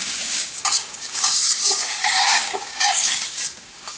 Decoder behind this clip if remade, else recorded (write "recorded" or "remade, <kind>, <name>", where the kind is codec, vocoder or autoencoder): remade, codec, DAC